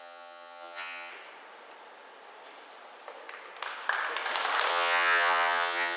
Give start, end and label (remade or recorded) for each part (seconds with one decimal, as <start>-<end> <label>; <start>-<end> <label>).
0.0-1.1 remade; 1.1-4.7 recorded; 4.7-6.0 remade